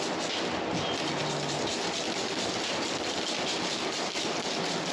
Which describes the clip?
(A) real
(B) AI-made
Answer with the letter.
A